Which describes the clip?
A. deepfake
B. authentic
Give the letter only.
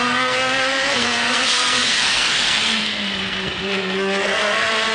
A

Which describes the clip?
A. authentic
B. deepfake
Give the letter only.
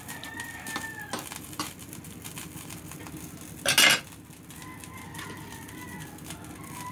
A